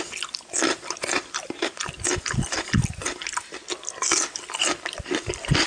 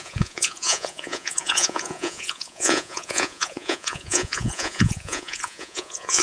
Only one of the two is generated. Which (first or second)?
second